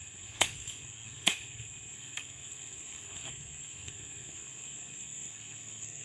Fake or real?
fake